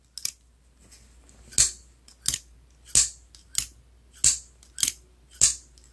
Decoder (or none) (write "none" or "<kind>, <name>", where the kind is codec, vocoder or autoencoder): none